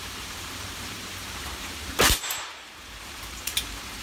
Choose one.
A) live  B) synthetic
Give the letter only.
B